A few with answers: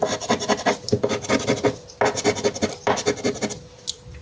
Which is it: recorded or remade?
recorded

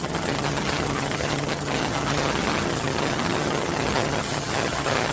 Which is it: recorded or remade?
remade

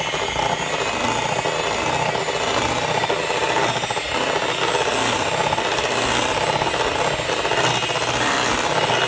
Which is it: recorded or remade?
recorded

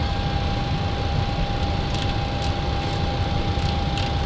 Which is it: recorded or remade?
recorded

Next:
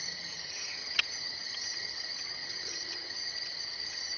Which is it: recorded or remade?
remade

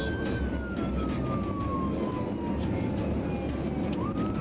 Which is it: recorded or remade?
recorded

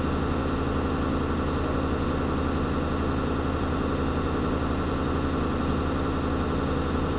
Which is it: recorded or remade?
recorded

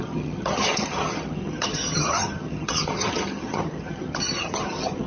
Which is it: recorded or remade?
remade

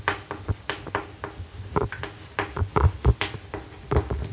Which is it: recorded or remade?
recorded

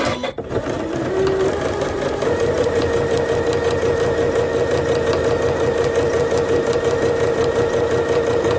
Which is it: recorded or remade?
recorded